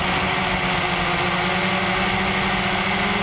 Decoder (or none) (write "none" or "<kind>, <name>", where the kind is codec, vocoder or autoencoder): none